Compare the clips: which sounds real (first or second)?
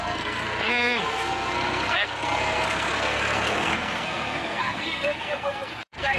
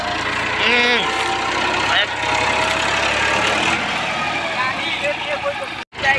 second